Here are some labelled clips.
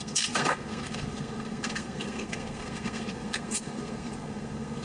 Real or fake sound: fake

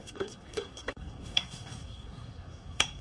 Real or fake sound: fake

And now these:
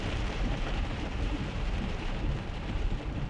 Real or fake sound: fake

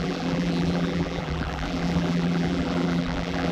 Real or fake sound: fake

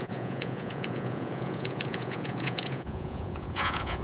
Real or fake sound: fake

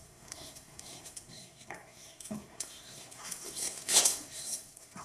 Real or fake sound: fake